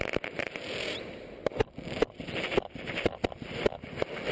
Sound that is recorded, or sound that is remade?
recorded